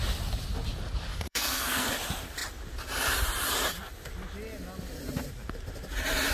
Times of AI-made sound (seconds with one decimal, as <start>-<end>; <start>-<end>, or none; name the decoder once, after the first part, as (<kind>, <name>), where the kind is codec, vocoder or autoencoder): 1.1-1.9 (codec, SNAC)